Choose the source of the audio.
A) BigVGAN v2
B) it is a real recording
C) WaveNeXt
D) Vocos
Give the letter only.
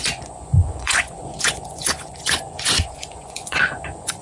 D